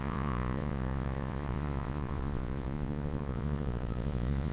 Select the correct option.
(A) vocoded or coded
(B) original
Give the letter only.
A